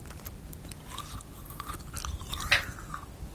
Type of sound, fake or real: real